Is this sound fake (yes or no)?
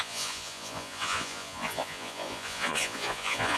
yes